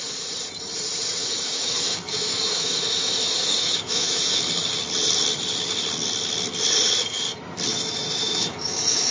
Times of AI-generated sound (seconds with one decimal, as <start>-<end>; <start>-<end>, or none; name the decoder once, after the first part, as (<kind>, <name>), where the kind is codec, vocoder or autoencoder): 1.2-4.4 (autoencoder, DAC-VAE); 7.7-9.1